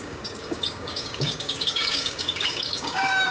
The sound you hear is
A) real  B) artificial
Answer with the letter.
B